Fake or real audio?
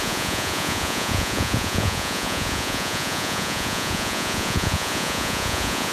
fake